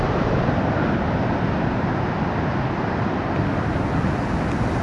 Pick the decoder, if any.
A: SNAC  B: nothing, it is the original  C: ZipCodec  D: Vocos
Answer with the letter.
B